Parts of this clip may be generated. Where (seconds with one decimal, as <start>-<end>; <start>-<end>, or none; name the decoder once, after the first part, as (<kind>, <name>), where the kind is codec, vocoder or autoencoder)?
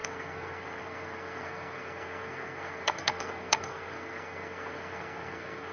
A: 0.0-5.7 (codec, SNAC)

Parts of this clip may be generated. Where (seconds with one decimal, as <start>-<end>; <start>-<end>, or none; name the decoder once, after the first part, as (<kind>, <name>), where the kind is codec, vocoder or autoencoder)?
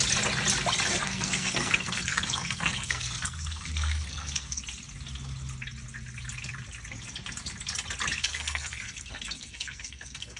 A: 0.9-4.6 (codec, SNAC); 8.2-10.4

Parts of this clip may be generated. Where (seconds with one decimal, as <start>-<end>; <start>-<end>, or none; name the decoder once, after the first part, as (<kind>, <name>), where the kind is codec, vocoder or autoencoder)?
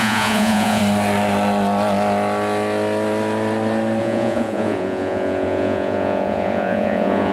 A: 0.0-0.8 (vocoder, Vocos); 4.0-7.3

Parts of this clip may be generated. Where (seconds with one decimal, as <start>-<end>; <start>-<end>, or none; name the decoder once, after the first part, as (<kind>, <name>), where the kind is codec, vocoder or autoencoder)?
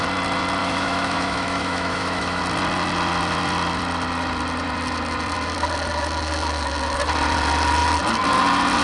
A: 0.6-2.4 (autoencoder, DAC-VAE)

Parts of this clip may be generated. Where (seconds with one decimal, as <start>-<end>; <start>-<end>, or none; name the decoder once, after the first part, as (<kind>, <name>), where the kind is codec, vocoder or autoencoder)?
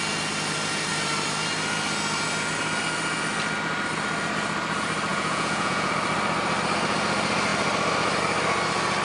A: 5.1-5.9 (vocoder, Vocos)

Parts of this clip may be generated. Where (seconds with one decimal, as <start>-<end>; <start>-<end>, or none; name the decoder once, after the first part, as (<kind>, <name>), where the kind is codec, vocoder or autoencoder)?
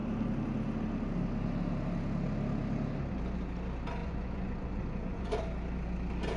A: 4.0-5.4 (vocoder, Vocos)